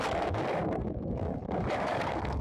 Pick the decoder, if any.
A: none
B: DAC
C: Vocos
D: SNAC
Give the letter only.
B